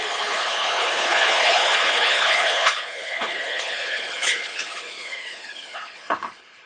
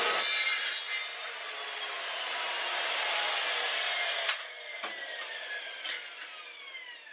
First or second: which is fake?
first